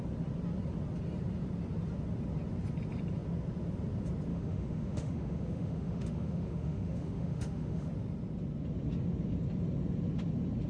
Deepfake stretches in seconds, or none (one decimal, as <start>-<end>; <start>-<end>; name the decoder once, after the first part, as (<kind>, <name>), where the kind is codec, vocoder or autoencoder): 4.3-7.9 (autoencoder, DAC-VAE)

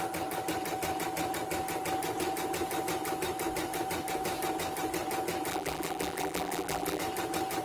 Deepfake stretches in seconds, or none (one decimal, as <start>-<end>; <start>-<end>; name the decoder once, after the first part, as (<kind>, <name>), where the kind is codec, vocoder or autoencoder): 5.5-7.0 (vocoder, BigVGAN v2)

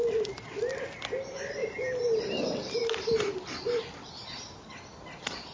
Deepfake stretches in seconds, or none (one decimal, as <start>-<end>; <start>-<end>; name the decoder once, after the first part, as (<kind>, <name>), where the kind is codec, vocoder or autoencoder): 1.6-2.4 (vocoder, BigVGAN v2); 2.8-3.8

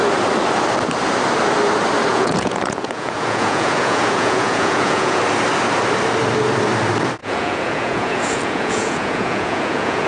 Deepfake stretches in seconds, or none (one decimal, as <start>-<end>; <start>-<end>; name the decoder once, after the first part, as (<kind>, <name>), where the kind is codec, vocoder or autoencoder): 2.1-5.2 (vocoder, Vocos); 7.2-10.1

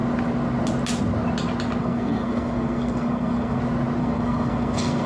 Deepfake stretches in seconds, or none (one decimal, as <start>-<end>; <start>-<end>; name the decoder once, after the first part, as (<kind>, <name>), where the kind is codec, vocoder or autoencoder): 1.8-3.6 (codec, SNAC); 4.0-5.1

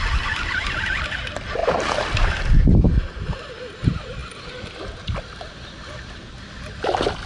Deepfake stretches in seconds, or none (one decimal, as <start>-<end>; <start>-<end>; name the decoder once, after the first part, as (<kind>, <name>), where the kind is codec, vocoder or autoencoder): 1.6-2.3 (vocoder, BigVGAN v2)